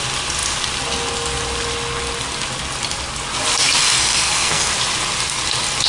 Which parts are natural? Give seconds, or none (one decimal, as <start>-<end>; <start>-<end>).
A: 0.0-3.8; 4.7-5.9